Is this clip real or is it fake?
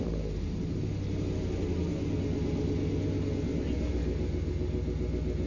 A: real